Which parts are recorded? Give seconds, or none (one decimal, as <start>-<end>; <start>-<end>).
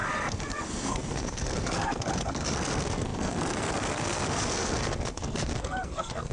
none